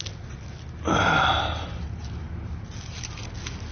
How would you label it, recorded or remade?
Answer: recorded